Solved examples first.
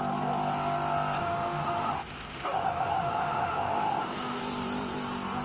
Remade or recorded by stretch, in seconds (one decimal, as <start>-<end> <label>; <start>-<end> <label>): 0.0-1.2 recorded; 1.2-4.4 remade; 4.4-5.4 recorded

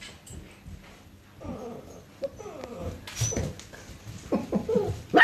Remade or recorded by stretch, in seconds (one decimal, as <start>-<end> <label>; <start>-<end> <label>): 0.0-5.2 recorded

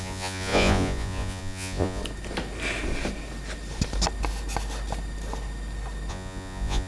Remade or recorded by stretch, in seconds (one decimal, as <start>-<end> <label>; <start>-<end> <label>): 0.0-2.0 remade; 2.0-6.1 recorded; 6.1-6.9 remade